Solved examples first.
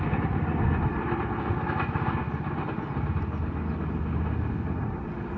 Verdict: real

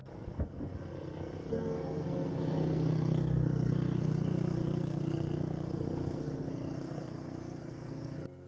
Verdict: fake